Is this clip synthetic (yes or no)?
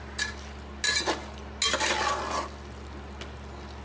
no